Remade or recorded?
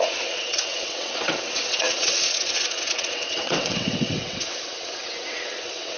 remade